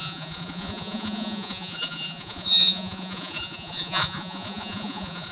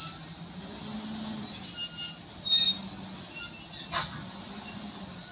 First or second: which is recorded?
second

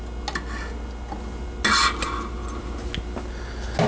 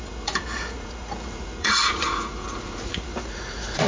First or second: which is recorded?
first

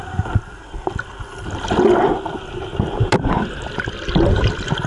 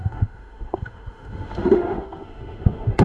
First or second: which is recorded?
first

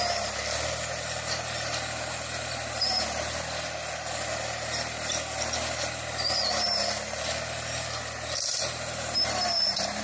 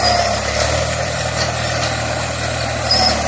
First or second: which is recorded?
first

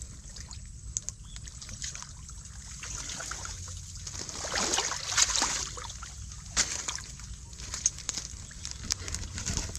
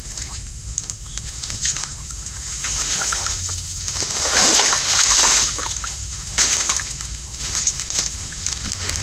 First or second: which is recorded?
first